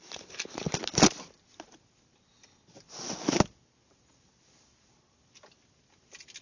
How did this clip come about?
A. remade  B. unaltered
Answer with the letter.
B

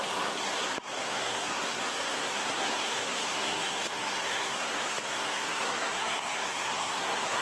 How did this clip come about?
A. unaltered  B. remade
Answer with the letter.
B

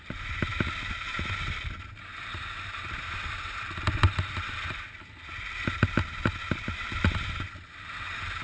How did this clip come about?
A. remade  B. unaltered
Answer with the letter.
B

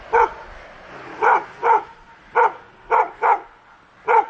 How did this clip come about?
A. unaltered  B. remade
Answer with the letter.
A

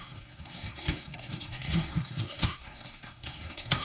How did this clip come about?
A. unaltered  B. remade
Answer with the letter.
B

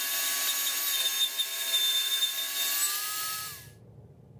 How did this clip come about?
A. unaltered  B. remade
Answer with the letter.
A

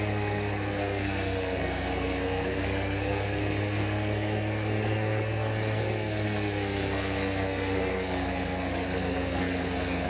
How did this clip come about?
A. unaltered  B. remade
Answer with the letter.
B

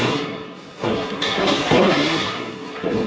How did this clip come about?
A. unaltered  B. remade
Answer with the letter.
B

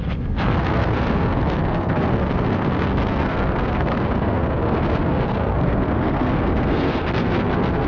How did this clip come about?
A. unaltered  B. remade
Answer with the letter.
B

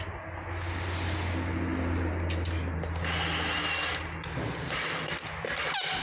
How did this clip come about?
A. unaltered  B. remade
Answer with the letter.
A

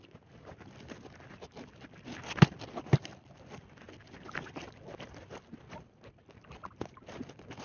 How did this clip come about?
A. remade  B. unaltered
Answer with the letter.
B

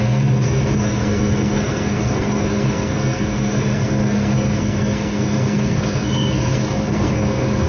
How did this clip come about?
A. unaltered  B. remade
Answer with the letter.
B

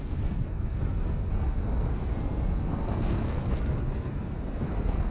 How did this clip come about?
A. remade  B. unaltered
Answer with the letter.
A